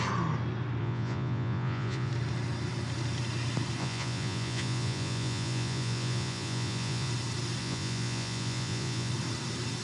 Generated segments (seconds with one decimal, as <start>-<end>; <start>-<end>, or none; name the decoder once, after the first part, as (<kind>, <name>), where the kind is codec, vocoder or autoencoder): 0.8-2.1 (vocoder, Vocos); 3.8-7.1; 7.6-9.1